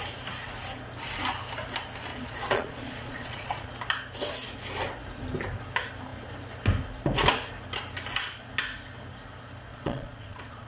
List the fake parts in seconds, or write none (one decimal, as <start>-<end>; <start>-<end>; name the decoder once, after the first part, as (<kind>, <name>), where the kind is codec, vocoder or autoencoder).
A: 2.1-3.7 (vocoder, Vocos); 9.7-10.7

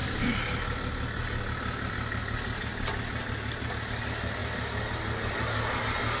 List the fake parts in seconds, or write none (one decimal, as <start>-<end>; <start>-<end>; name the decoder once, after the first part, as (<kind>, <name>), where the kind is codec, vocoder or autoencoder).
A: none

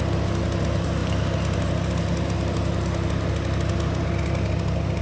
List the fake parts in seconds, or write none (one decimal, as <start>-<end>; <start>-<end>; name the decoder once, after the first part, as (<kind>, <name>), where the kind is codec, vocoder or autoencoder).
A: none

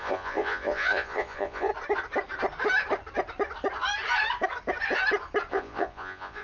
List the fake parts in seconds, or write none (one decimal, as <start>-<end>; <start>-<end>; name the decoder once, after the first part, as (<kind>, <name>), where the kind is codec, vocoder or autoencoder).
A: 0.0-1.7 (vocoder, Vocos); 5.5-6.4

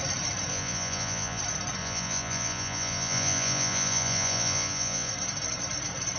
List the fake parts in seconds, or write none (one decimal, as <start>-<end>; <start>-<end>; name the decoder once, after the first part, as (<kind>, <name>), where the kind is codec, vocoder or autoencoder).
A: 0.5-1.4 (vocoder, Vocos); 1.8-5.1

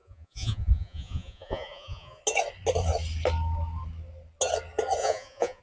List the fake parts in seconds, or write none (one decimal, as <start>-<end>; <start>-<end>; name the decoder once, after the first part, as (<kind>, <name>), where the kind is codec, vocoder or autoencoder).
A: 0.0-2.2 (vocoder, Vocos); 5.0-5.6

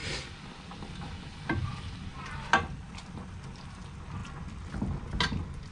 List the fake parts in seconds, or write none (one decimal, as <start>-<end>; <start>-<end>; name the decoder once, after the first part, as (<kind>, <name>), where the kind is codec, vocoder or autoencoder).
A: none